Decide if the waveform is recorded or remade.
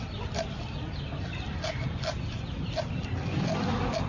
recorded